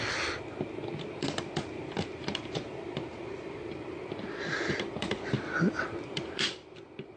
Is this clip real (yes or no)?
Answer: no